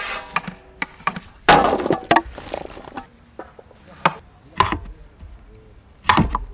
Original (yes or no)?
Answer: yes